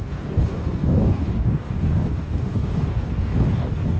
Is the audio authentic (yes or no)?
no